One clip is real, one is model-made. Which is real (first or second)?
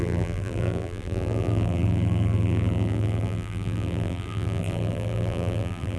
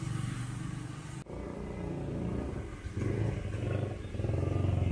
second